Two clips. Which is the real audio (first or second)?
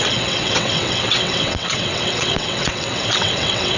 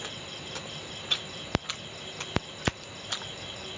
second